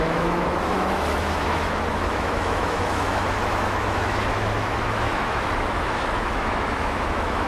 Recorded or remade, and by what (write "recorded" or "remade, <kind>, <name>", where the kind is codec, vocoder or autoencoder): remade, autoencoder, DAC-VAE